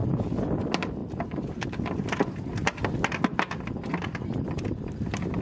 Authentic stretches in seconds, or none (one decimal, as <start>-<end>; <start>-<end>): 0.0-5.4